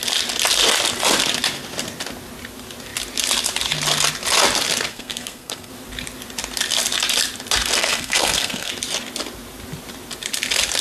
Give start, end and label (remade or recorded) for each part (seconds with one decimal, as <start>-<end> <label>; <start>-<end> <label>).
0.0-4.9 recorded; 4.9-5.7 remade; 5.7-7.8 recorded; 7.8-8.7 remade; 8.7-10.8 recorded